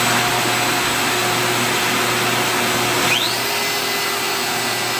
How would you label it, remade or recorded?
recorded